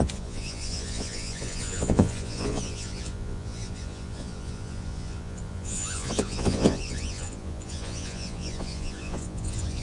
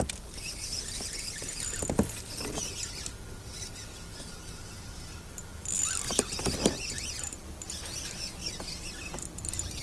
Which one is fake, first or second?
first